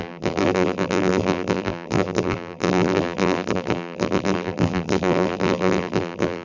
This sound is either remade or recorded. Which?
remade